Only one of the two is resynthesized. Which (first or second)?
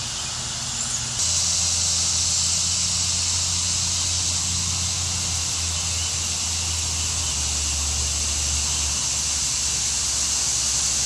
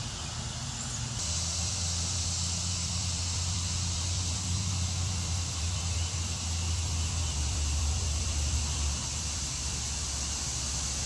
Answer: second